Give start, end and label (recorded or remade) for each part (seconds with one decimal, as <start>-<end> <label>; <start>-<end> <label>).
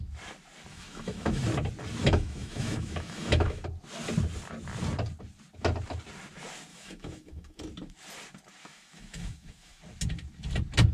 0.0-0.7 recorded; 0.7-1.4 remade; 1.4-2.0 recorded; 2.0-3.6 remade; 3.6-6.7 recorded; 6.7-7.6 remade; 7.6-8.6 recorded; 8.6-9.8 remade; 9.8-10.9 recorded